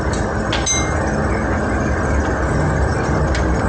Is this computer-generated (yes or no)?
no